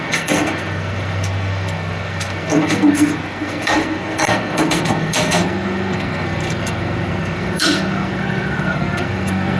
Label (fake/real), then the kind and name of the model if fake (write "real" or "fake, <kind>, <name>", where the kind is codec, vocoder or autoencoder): fake, codec, SNAC